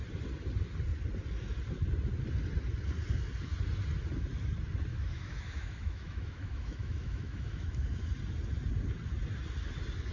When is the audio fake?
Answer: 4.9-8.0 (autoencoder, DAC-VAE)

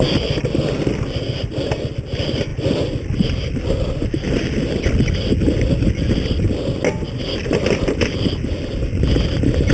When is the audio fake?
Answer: none

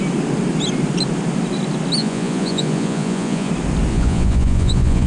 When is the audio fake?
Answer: 2.0-3.5 (vocoder, Vocos); 3.9-5.1

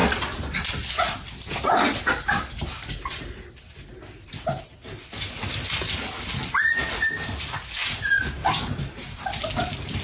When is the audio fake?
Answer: none

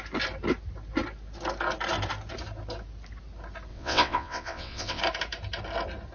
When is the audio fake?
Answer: 3.7-5.0 (vocoder, WaveNeXt)

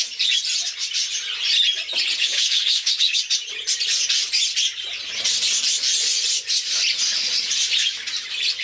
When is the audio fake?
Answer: 2.2-3.2 (codec, DAC)

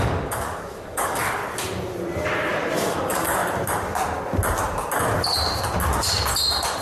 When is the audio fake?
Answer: 0.0-1.4 (codec, DAC); 2.9-3.4